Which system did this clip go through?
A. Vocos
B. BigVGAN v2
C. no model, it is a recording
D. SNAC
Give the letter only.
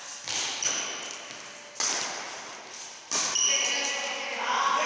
C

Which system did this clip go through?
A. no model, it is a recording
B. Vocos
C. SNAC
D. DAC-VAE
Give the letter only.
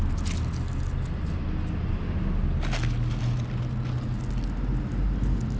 A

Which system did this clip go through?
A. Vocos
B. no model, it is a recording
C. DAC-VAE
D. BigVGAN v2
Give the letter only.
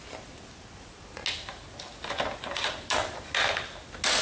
B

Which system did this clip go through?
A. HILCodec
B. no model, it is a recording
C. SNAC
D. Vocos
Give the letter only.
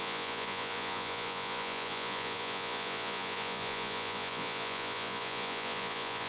D